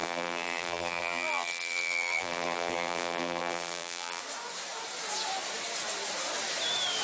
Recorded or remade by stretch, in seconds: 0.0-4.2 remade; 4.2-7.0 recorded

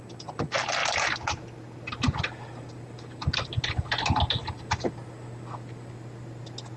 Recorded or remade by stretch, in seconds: 0.0-6.8 recorded

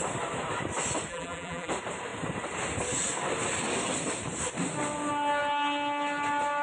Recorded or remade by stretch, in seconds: 0.0-1.1 recorded; 1.1-1.7 remade; 1.7-6.6 recorded

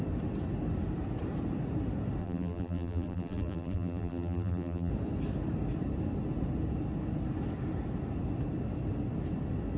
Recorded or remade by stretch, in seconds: 0.0-2.2 recorded; 2.2-4.9 remade; 4.9-9.8 recorded

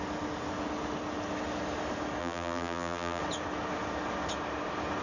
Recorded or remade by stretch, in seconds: 0.0-2.2 recorded; 2.2-3.2 remade; 3.2-5.0 recorded

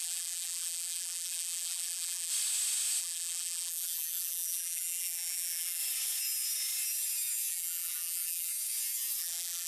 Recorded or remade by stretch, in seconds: 0.0-2.3 remade; 2.3-3.0 recorded; 3.0-5.8 remade; 5.8-7.5 recorded; 7.5-8.5 remade; 8.5-9.2 recorded; 9.2-9.7 remade